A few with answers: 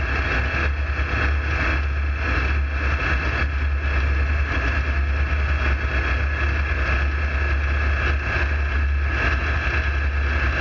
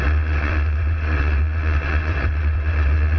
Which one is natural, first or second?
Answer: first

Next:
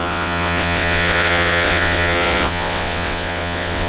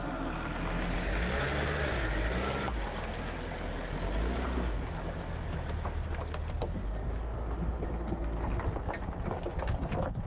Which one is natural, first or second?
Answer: second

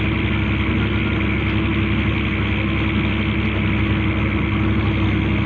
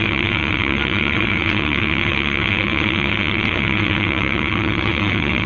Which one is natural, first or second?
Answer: first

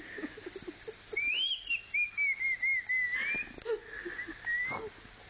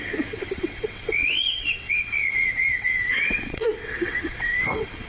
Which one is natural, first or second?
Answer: first